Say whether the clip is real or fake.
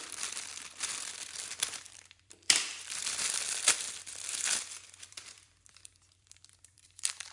fake